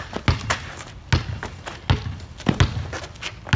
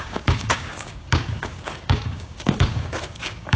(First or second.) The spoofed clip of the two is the second